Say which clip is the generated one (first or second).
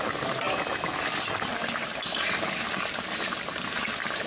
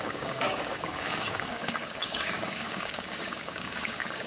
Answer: second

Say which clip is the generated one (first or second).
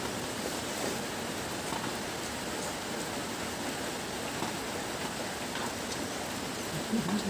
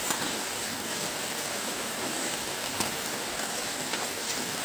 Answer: second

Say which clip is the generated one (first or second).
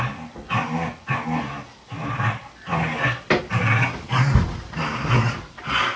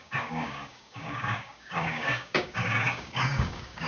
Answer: second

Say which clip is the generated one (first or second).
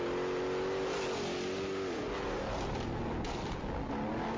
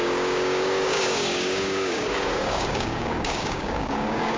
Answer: second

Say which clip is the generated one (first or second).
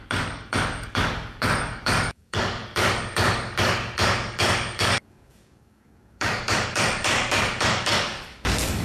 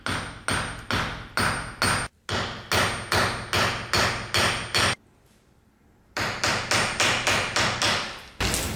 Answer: first